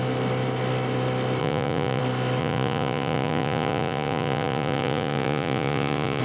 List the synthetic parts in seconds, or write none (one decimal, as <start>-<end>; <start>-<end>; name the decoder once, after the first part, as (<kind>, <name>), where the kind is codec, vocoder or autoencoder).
1.4-2.0 (vocoder, Vocos); 2.4-6.2

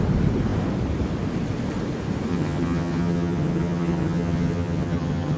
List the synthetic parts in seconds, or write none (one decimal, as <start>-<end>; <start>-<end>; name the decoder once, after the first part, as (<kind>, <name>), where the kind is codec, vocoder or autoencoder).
2.3-5.4 (vocoder, HiFi-GAN)

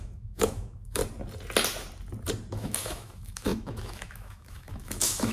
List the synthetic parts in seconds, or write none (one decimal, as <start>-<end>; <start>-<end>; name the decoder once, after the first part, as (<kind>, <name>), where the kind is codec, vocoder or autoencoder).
0.0-1.0 (autoencoder, DAC-VAE); 2.5-5.3

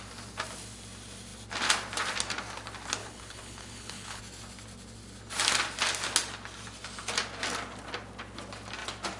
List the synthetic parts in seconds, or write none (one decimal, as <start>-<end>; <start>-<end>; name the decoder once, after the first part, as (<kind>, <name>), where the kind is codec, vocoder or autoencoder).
3.0-4.2 (codec, HILCodec)

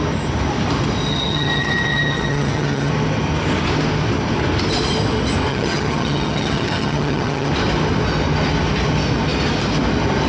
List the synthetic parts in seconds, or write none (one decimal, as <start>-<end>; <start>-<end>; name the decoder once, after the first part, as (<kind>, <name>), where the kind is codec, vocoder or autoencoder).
1.1-2.9 (vocoder, HiFi-GAN); 5.5-7.5